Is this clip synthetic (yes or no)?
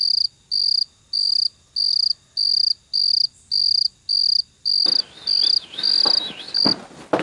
no